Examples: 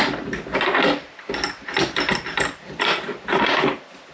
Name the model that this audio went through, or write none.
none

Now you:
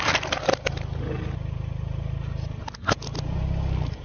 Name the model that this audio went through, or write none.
none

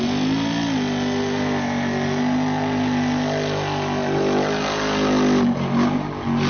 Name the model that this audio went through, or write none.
none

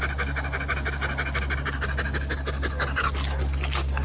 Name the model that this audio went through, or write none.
none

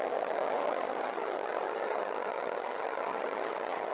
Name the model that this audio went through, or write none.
vocoder, HiFi-GAN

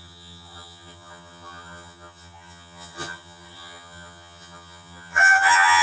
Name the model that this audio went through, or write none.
vocoder, HiFi-GAN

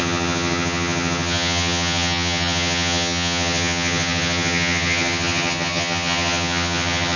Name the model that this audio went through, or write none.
vocoder, HiFi-GAN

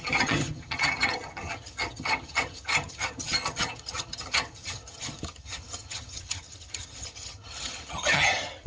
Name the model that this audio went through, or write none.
vocoder, HiFi-GAN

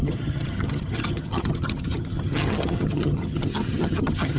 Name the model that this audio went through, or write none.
vocoder, HiFi-GAN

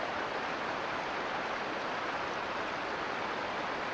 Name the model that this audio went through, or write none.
none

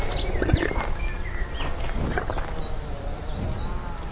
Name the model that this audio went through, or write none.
none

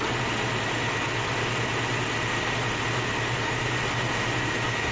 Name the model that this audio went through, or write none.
none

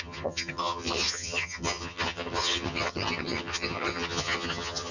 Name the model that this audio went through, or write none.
vocoder, HiFi-GAN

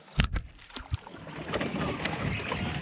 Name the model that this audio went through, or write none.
none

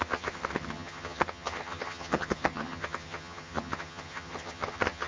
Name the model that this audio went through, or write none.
vocoder, HiFi-GAN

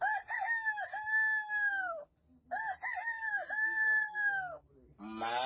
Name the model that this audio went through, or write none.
none